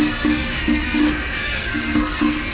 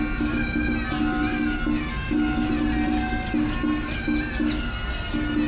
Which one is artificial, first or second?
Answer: first